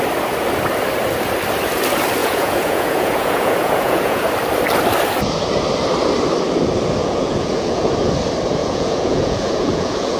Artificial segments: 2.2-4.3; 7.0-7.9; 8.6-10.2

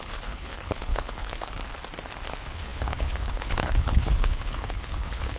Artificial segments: 0.0-1.6; 2.3-5.4

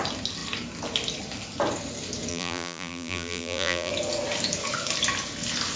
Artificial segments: 2.3-3.9

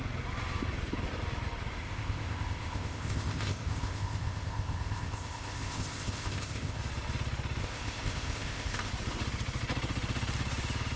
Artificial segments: 1.8-6.8; 7.6-8.9

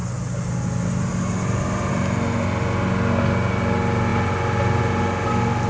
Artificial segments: none

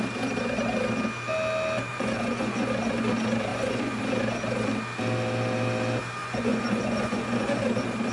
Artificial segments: 1.9-2.7; 3.5-4.0; 6.2-7.6